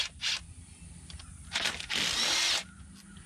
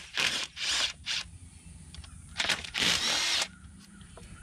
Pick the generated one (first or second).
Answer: second